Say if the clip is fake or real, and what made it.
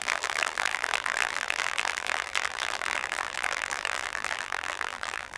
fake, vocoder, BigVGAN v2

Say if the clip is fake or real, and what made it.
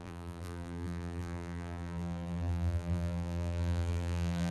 fake, vocoder, BigVGAN v2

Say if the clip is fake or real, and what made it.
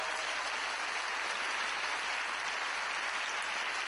real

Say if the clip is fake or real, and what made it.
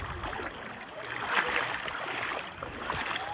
real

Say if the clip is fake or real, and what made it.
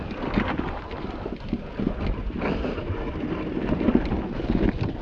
real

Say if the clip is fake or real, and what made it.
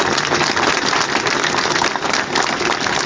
real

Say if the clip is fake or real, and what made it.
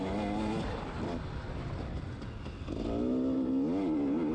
real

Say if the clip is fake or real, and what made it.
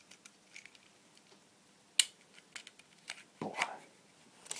real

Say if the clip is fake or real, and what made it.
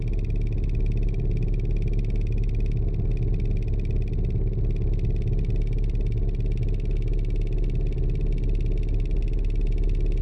real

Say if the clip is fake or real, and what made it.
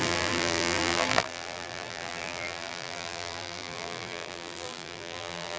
fake, vocoder, BigVGAN v2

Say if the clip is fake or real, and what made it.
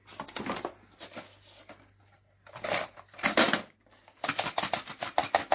real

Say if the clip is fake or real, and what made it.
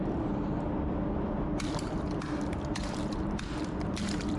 fake, vocoder, BigVGAN v2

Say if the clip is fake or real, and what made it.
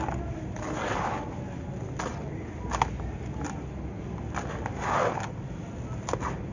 real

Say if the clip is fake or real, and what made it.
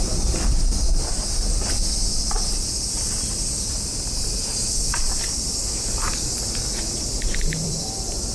fake, vocoder, BigVGAN v2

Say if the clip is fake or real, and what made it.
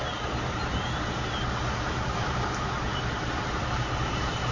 fake, vocoder, BigVGAN v2